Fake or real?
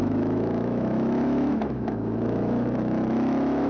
fake